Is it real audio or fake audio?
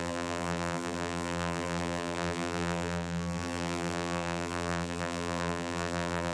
fake